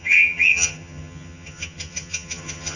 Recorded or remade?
remade